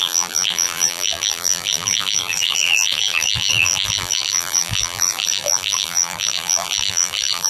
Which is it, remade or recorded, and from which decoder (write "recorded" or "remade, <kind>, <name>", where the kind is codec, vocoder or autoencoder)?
remade, vocoder, BigVGAN v2